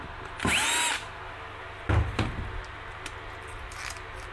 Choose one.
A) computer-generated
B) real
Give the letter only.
B